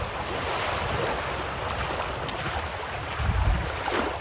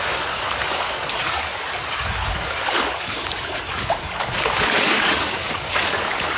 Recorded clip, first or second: first